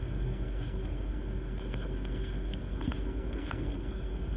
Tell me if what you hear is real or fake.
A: fake